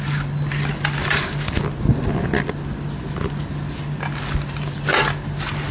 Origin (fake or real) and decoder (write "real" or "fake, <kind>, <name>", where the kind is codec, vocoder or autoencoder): real